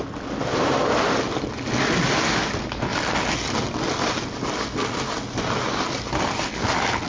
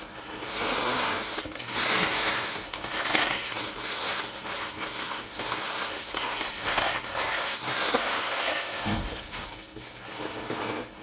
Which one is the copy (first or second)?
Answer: second